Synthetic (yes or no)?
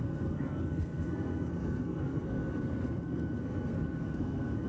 yes